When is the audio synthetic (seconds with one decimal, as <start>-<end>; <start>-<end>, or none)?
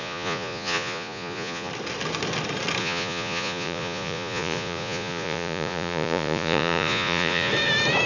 0.0-1.7; 2.8-7.5